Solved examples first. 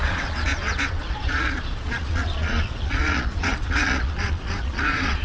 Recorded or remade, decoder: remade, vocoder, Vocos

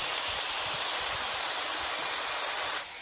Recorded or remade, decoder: remade, vocoder, BigVGAN v2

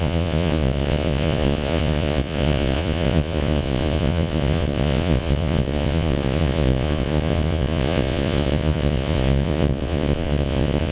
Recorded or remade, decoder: remade, vocoder, Vocos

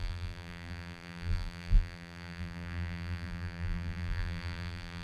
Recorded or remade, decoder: remade, vocoder, BigVGAN v2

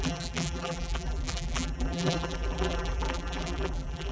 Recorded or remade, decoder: remade, vocoder, BigVGAN v2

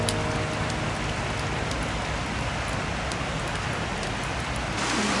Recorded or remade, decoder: recorded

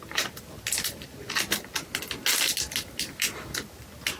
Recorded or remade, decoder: recorded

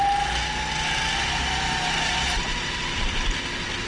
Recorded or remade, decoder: recorded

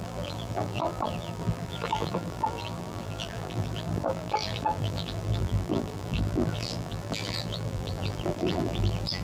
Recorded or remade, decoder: remade, vocoder, BigVGAN v2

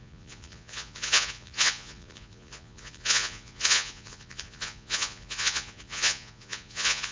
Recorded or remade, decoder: remade, vocoder, Vocos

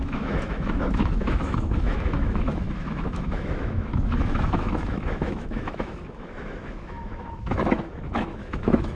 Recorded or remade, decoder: remade, autoencoder, DAC-VAE